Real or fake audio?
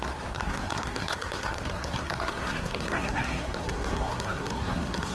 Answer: fake